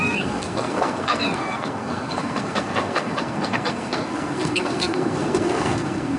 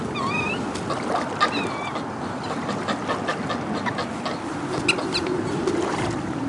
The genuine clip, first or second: second